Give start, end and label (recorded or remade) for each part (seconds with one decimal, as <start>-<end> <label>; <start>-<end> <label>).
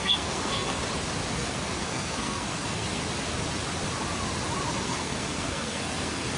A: 0.0-0.8 remade; 0.8-1.3 recorded; 1.3-3.0 remade; 3.0-4.7 recorded; 4.7-6.4 remade